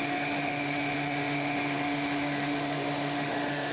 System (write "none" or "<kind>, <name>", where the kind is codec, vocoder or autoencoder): autoencoder, DAC-VAE